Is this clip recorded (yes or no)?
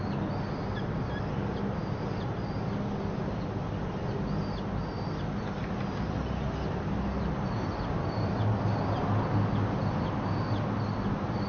yes